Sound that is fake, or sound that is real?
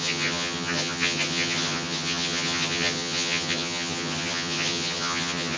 fake